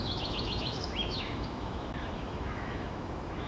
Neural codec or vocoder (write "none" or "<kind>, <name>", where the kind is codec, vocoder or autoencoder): autoencoder, DAC-VAE